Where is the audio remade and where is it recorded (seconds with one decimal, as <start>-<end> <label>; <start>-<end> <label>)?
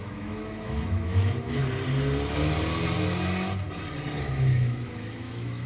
0.0-1.6 remade; 1.6-4.2 recorded; 4.2-5.7 remade